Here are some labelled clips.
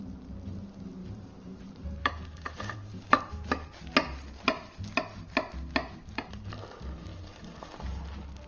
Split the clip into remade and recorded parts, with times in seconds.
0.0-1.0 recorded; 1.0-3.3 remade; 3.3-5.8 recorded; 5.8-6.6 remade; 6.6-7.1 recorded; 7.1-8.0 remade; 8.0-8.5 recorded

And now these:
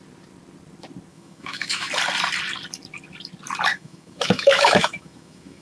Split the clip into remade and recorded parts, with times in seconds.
0.0-1.1 recorded; 1.1-1.9 remade; 1.9-3.7 recorded; 3.7-5.6 remade

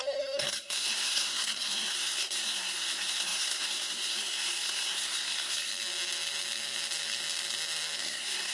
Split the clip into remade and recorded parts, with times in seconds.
0.0-5.7 remade; 5.7-8.0 recorded; 8.0-8.5 remade

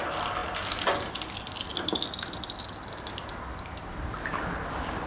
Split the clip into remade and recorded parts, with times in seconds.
0.0-5.1 recorded

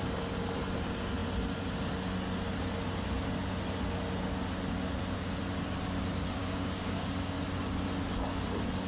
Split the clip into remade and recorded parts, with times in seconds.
0.0-6.4 recorded; 6.4-7.4 remade; 7.4-8.9 recorded

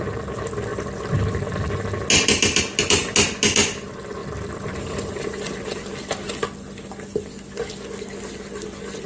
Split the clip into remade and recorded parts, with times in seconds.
0.0-9.1 recorded

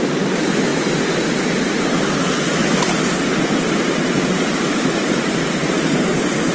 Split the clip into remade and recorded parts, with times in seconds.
0.0-0.7 remade; 0.7-1.7 recorded; 1.7-6.5 remade